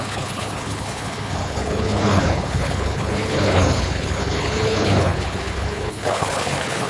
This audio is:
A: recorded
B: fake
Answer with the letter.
B